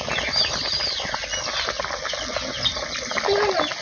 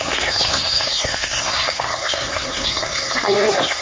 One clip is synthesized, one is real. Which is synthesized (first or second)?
second